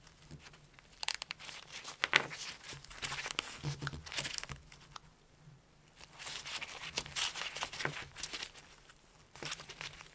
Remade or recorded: recorded